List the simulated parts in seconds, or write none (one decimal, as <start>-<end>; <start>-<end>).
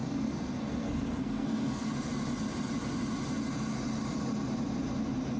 0.0-1.9